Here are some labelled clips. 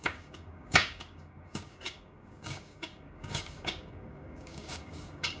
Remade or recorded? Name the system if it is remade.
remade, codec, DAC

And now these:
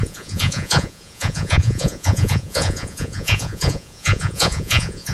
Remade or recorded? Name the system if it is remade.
remade, vocoder, Vocos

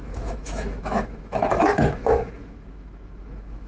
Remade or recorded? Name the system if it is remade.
remade, autoencoder, DAC-VAE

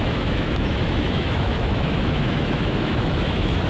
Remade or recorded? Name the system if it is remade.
remade, autoencoder, DAC-VAE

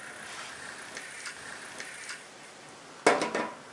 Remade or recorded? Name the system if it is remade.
recorded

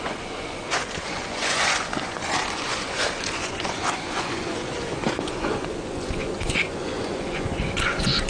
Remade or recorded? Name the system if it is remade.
remade, vocoder, Vocos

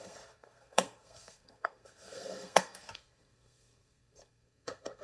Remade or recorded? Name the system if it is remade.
remade, codec, SNAC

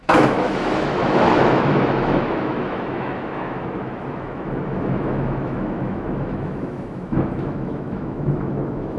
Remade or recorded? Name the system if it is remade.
remade, autoencoder, DAC-VAE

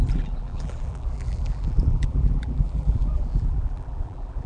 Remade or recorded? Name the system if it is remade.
remade, vocoder, BigVGAN v2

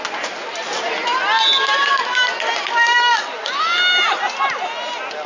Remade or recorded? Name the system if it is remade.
recorded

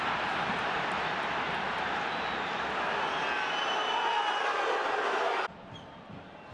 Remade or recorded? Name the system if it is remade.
recorded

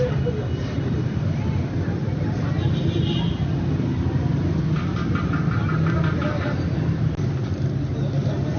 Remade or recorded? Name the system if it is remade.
recorded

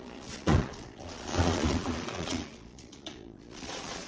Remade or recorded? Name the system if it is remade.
remade, vocoder, Vocos